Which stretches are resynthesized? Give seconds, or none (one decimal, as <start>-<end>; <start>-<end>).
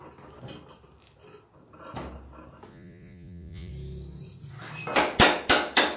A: 2.7-3.7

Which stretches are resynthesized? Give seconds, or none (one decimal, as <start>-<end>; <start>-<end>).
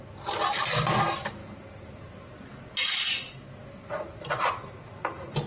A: none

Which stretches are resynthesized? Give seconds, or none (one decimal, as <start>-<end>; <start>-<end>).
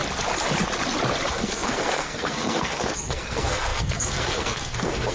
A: 1.3-5.1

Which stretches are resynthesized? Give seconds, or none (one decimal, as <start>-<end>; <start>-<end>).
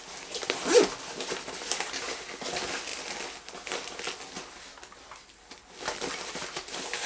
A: none